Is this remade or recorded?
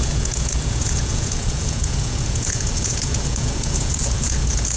remade